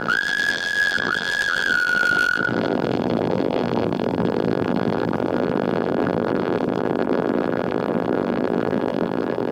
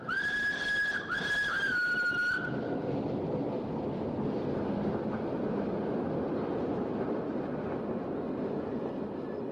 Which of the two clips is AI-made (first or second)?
first